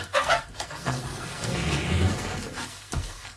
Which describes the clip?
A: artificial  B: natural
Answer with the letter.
A